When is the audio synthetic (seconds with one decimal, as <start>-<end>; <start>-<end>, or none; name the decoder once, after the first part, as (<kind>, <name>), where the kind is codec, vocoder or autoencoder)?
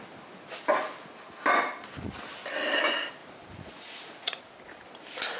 3.2-4.4 (vocoder, Vocos)